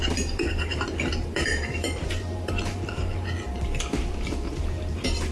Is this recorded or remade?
remade